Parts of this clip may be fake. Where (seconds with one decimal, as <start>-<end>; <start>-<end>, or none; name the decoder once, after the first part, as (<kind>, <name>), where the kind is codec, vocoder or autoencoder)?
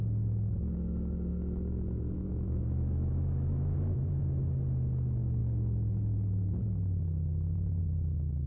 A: 1.3-4.2 (autoencoder, DAC-VAE); 5.4-7.8